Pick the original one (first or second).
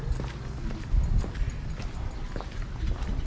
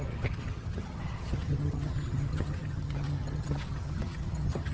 first